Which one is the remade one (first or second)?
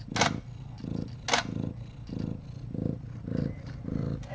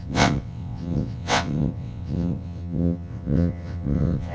second